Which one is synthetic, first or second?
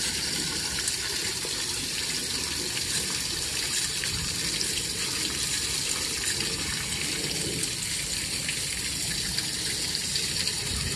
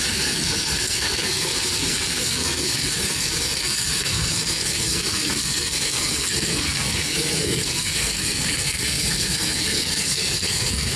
second